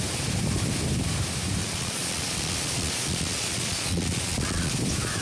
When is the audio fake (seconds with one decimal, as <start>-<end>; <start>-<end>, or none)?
1.6-4.7